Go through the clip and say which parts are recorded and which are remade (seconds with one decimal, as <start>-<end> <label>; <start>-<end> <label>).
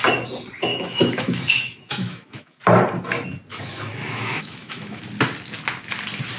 0.0-0.7 recorded; 0.7-2.6 remade; 2.6-3.5 recorded; 3.5-5.0 remade; 5.0-6.4 recorded